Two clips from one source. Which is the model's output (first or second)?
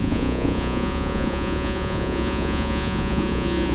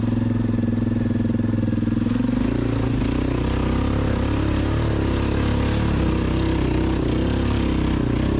first